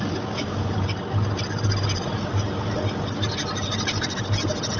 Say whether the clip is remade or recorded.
recorded